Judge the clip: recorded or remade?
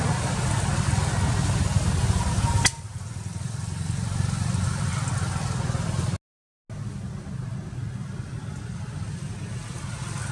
recorded